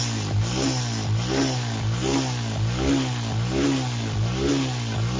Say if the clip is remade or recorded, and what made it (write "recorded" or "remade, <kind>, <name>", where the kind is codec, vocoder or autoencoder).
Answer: recorded